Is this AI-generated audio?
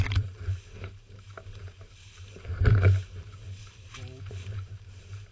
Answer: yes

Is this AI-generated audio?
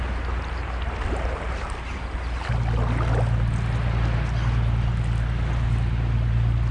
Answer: no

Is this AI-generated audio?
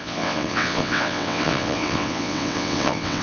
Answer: yes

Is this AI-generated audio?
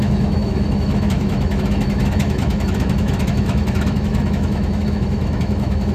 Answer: yes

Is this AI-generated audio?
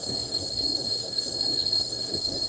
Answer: yes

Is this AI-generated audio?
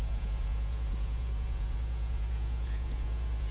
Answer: yes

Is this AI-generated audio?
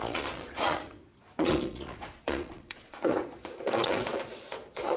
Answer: yes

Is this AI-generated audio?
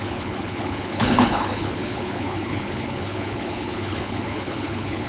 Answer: yes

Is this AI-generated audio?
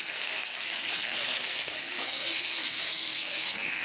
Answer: yes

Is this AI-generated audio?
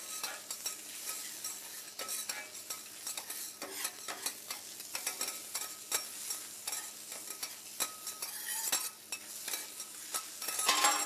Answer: no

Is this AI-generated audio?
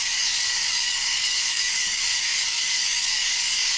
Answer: yes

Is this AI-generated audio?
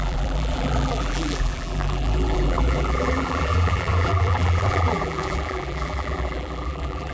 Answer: yes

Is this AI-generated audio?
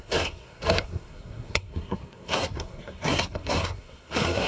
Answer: yes